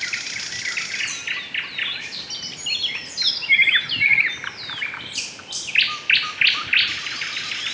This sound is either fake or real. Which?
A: real